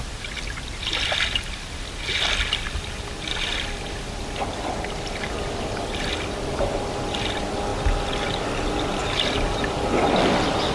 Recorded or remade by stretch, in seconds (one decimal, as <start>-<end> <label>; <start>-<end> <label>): 0.0-10.7 recorded